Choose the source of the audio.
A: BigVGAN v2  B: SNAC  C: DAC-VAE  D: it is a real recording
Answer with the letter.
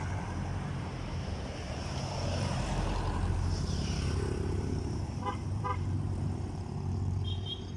A